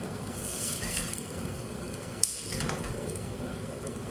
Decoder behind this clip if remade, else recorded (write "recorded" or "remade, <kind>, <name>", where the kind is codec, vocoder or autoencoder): remade, codec, SNAC